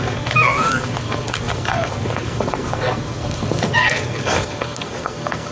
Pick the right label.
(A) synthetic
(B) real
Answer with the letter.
A